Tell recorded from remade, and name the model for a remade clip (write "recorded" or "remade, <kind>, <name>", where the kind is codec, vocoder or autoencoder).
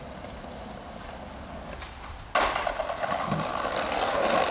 recorded